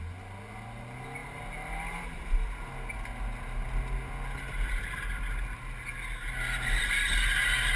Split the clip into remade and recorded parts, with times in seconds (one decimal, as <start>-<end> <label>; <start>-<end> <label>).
0.0-1.2 recorded; 1.2-2.2 remade; 2.2-7.8 recorded